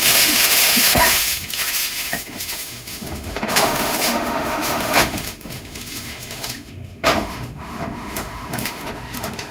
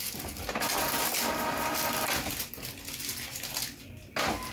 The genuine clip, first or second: second